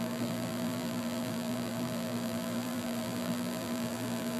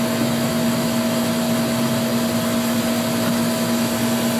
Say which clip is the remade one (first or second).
first